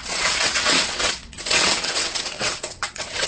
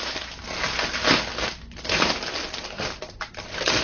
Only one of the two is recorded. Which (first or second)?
second